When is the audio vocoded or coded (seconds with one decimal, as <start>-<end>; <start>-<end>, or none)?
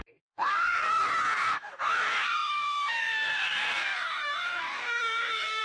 0.0-5.6